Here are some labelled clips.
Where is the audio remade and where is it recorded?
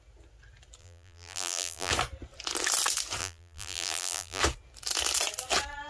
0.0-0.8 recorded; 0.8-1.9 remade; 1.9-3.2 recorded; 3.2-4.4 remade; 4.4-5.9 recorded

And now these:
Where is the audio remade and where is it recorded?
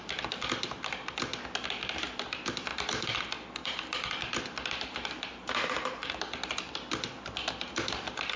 0.0-2.7 recorded; 2.7-3.2 remade; 3.2-3.6 recorded; 3.6-6.2 remade; 6.2-8.4 recorded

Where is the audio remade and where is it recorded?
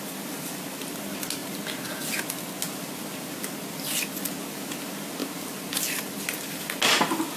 0.0-7.4 recorded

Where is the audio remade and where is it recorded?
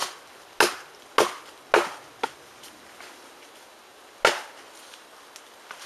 0.0-5.9 recorded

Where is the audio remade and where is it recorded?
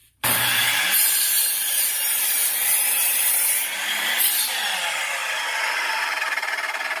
0.0-4.2 remade; 4.2-7.0 recorded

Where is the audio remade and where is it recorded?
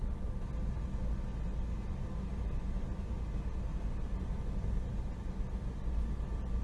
0.0-3.7 recorded; 3.7-5.0 remade; 5.0-6.6 recorded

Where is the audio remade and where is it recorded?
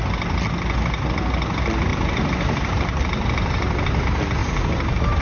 0.0-1.9 recorded; 1.9-4.0 remade; 4.0-4.4 recorded; 4.4-5.2 remade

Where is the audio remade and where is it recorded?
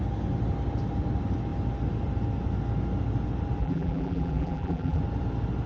0.0-3.6 recorded; 3.6-5.0 remade; 5.0-5.7 recorded